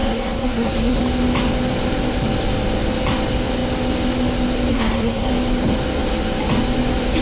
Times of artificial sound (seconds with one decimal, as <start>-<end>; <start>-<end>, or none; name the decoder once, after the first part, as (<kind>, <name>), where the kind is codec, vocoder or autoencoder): 0.0-1.0 (codec, SNAC); 4.7-5.3